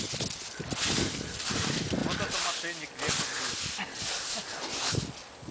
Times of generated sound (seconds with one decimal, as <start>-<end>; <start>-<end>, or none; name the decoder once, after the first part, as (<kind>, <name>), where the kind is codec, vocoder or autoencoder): none